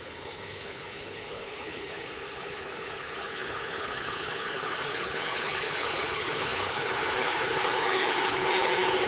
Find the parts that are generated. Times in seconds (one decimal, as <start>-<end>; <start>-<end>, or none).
0.0-9.1